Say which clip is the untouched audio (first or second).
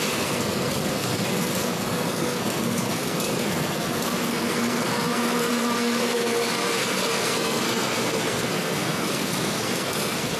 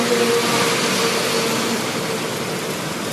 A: second